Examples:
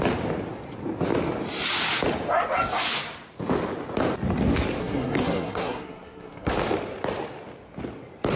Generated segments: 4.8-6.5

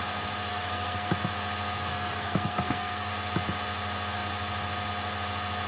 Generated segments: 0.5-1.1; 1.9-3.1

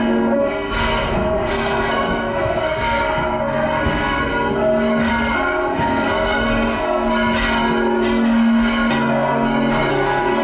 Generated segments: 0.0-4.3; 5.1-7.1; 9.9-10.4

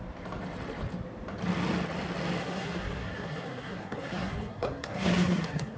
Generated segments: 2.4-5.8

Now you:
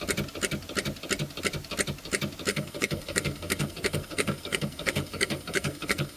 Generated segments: 2.5-6.2

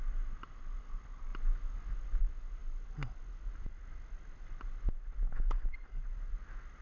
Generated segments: none

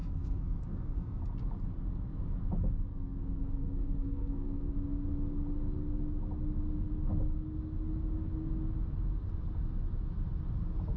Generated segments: 0.0-1.2; 2.9-4.7

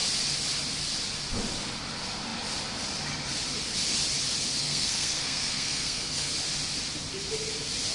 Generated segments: 4.6-6.3